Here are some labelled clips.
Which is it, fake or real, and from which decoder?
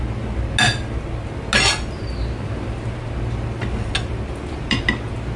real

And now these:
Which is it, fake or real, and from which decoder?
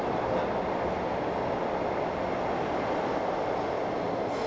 real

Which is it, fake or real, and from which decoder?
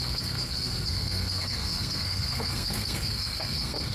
fake, codec, SNAC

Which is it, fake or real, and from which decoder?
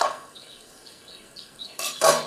fake, codec, SNAC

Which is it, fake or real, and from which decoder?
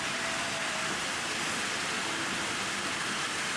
real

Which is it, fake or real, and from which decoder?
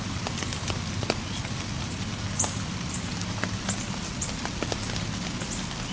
real